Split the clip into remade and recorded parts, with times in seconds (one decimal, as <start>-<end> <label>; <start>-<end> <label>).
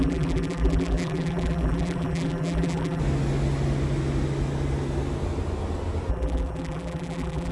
0.0-3.0 remade; 3.0-6.1 recorded; 6.1-7.5 remade